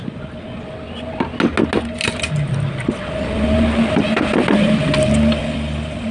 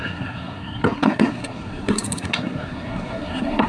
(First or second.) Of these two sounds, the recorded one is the first